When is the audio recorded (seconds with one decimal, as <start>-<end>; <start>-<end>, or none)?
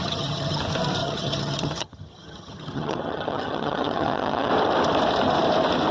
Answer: 0.6-1.0; 4.5-5.9